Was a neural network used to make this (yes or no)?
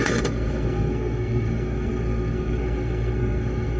yes